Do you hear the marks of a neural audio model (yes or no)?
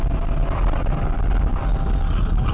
no